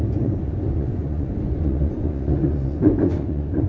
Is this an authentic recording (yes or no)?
no